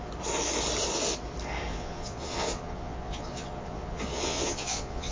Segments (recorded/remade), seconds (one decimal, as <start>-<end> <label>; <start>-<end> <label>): 0.0-1.7 recorded; 1.7-5.1 remade